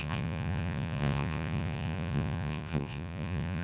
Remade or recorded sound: remade